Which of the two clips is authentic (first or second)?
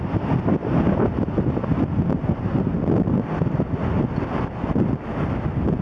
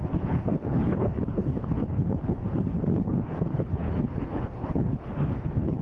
first